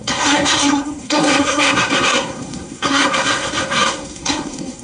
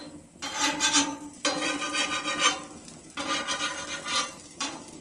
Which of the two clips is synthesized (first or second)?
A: first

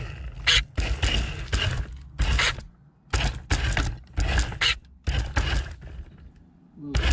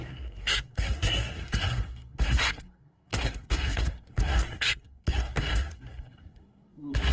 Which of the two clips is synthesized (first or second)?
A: second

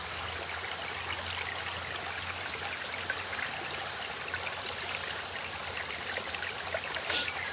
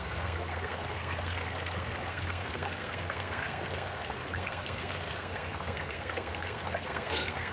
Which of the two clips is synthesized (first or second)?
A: second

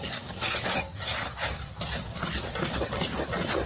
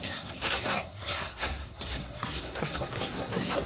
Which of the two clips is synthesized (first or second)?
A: second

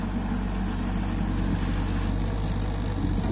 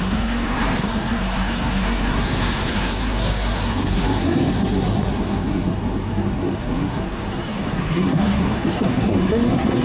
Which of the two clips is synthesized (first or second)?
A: second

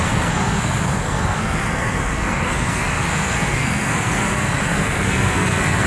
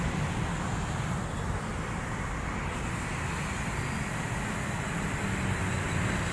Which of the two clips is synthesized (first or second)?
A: first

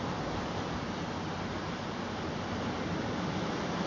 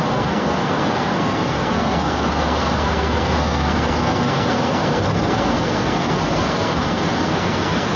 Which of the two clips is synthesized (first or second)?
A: second